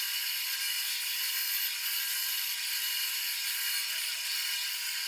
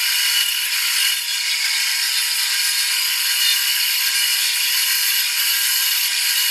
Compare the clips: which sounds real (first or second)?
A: first